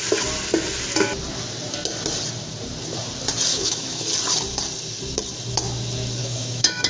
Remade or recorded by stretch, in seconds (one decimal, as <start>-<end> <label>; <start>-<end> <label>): 0.0-3.5 recorded; 3.5-4.1 remade; 4.1-6.2 recorded; 6.2-6.9 remade